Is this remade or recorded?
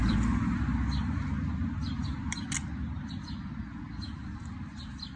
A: recorded